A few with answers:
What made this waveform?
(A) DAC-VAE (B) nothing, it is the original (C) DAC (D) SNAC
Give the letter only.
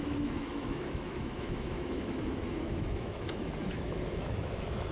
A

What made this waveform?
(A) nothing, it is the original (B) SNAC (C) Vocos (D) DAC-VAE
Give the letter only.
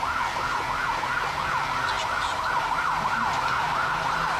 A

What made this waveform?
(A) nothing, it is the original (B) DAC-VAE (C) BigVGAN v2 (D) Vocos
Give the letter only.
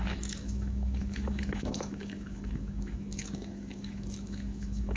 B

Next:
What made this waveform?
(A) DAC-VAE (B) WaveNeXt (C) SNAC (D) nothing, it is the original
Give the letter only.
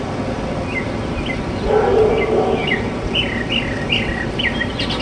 D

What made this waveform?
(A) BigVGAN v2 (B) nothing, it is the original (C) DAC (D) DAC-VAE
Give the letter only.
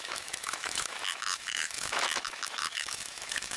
D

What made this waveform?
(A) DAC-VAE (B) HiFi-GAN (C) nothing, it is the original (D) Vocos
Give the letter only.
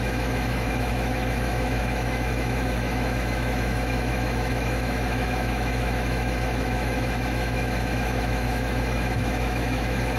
A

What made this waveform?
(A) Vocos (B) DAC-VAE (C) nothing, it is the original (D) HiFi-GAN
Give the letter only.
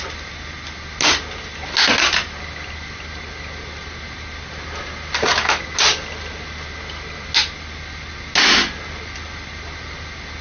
C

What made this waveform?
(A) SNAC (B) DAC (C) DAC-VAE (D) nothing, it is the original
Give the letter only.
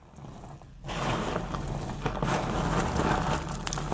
D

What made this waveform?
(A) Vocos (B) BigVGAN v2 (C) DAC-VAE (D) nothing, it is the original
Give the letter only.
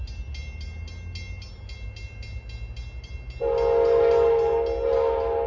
D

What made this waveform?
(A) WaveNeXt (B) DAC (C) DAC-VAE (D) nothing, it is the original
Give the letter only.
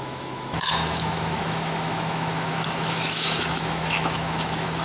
C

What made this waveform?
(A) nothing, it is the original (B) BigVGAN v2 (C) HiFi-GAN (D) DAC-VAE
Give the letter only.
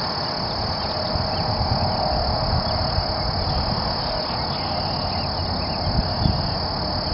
A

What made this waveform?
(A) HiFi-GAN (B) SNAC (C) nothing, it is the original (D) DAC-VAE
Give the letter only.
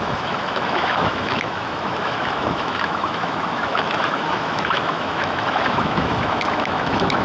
D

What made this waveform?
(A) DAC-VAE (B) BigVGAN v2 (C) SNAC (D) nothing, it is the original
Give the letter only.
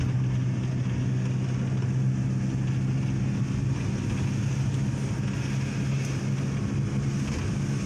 D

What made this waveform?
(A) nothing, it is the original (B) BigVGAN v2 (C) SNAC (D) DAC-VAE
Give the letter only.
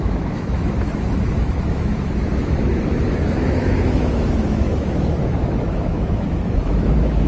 D